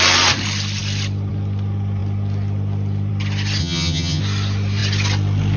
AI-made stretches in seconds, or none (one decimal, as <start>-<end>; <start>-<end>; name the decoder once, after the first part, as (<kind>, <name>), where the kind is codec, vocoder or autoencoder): 3.6-4.2 (vocoder, HiFi-GAN)